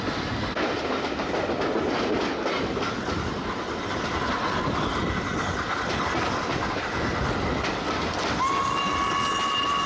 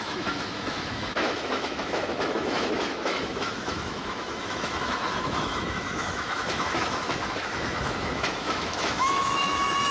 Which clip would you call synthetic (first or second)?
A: second